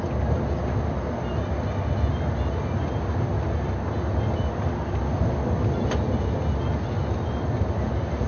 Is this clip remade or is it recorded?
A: recorded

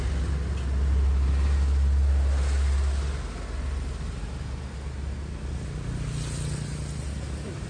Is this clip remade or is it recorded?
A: recorded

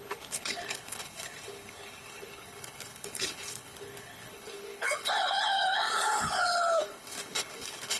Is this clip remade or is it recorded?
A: remade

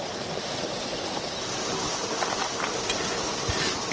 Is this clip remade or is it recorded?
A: recorded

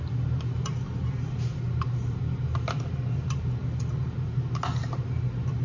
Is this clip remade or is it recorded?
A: recorded